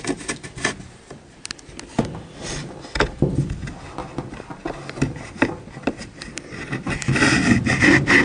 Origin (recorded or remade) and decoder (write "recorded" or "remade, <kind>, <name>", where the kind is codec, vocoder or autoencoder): recorded